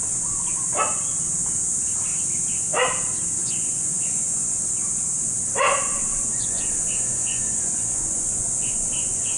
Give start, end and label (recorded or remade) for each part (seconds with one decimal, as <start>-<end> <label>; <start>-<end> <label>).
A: 0.0-3.4 recorded; 3.4-4.6 remade; 4.6-6.1 recorded; 6.1-9.4 remade